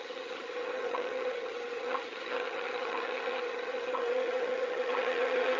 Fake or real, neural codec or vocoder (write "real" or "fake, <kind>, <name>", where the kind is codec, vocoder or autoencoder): fake, vocoder, HiFi-GAN